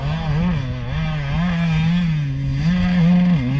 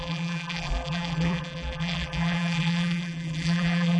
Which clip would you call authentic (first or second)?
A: first